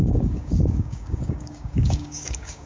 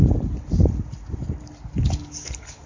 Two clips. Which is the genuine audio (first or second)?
second